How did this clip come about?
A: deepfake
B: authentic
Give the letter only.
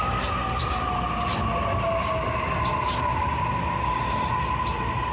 B